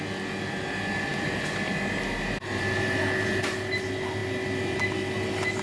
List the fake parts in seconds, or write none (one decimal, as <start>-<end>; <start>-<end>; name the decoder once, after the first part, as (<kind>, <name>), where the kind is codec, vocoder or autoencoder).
none